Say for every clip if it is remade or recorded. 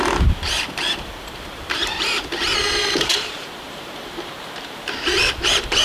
remade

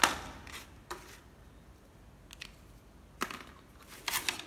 recorded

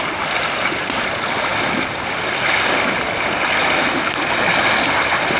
recorded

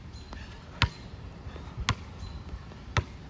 recorded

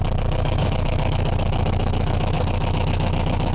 remade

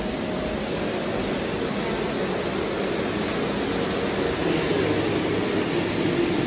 recorded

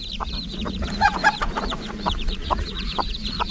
remade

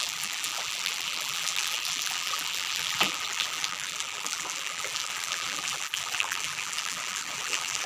remade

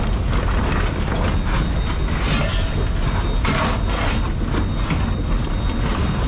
recorded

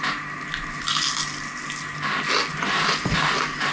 recorded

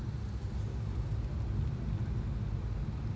recorded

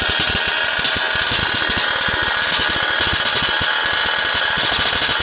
recorded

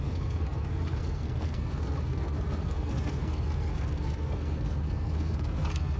remade